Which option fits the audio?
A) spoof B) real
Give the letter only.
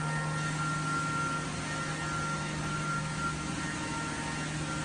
B